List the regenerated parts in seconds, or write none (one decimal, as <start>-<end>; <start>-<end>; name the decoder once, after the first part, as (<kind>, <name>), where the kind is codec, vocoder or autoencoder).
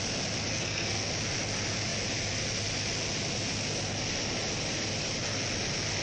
0.5-1.1 (codec, SNAC)